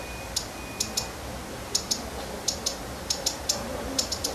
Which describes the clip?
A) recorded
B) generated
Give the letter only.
A